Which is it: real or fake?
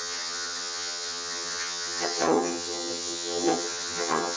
fake